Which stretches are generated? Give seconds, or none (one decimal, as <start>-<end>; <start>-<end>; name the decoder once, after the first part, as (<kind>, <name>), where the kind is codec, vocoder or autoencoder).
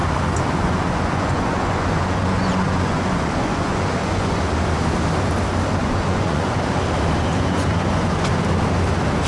0.0-4.4 (vocoder, Vocos); 5.8-6.6; 7.3-8.3